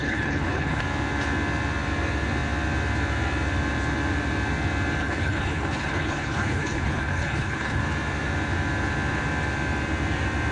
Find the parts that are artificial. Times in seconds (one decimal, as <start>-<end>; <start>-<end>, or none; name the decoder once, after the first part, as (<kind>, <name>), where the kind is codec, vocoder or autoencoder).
0.0-0.8 (codec, HILCodec); 5.0-7.8